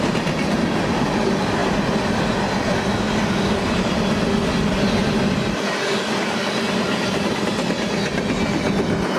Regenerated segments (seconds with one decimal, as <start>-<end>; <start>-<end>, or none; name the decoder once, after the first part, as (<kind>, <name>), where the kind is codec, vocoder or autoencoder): none